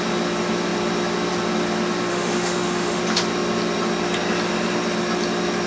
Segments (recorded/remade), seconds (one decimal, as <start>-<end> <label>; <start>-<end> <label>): 0.0-2.1 recorded; 2.1-3.0 remade; 3.0-5.7 recorded